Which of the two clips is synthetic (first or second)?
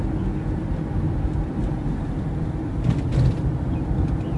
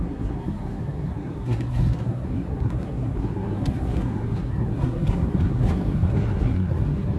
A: second